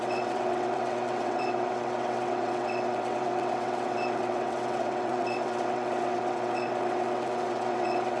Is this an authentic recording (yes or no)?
no